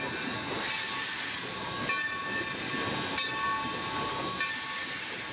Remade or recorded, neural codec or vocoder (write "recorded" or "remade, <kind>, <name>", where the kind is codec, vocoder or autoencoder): recorded